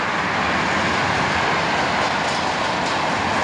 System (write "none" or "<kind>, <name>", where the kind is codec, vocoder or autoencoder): none